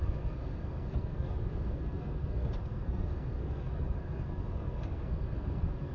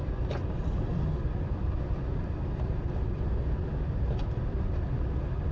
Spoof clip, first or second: first